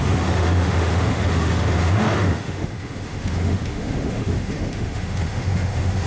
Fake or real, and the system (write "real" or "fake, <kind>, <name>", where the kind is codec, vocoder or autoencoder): fake, autoencoder, DAC-VAE